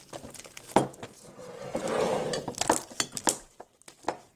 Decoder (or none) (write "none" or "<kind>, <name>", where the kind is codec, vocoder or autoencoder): none